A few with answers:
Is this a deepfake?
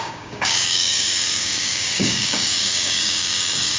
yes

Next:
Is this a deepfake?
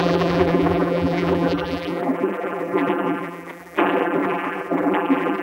yes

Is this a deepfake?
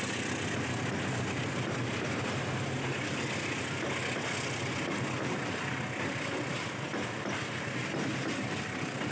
no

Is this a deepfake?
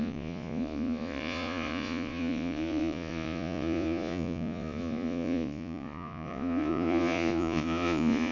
yes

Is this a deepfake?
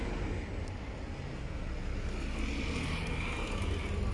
no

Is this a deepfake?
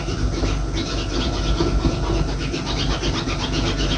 no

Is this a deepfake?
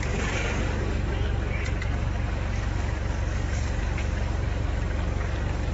yes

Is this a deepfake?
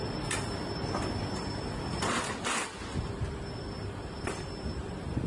yes